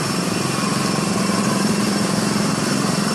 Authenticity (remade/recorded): recorded